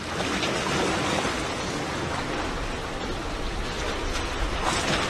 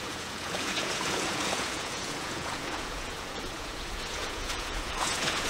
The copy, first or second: second